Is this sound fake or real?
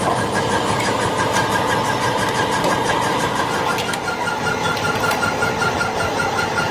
real